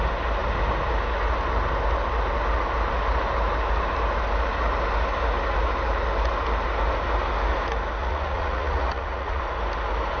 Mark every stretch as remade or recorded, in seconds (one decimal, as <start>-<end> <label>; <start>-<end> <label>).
0.0-8.0 recorded; 8.0-9.4 remade; 9.4-10.2 recorded